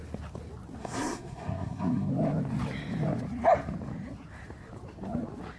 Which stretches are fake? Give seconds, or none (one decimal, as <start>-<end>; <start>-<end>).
0.8-2.1